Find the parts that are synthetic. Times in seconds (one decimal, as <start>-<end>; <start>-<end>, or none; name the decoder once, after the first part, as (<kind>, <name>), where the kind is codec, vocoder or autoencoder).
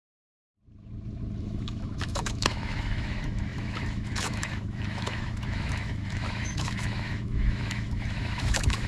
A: 1.4-8.9 (autoencoder, DAC-VAE)